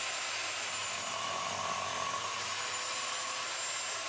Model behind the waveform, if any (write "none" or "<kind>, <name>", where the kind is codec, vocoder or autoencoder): none